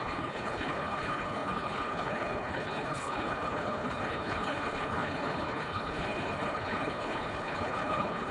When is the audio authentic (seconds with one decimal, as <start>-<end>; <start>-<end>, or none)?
none